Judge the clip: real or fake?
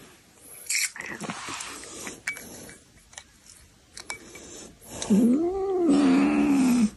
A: real